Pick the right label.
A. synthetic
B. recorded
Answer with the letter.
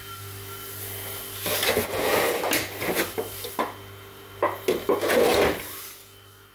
B